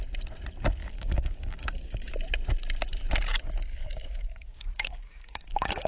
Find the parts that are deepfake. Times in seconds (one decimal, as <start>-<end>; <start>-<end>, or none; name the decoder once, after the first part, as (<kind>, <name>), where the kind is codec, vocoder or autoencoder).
0.8-2.1 (codec, DAC); 3.7-5.9